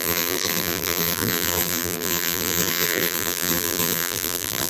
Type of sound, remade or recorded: remade